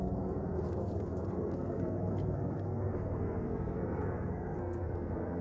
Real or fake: fake